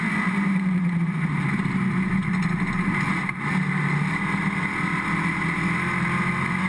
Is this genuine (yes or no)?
yes